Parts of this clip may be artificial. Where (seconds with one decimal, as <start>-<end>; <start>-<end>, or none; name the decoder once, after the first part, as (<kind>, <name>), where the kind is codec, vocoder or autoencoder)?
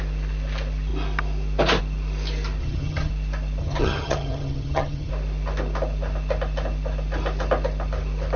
2.6-3.1 (vocoder, HiFi-GAN); 3.6-5.1